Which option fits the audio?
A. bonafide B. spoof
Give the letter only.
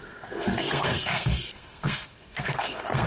B